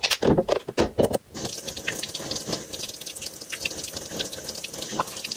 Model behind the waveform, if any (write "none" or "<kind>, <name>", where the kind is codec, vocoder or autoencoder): none